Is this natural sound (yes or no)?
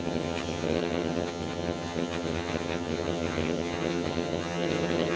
no